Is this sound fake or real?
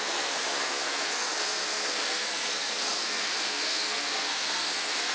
fake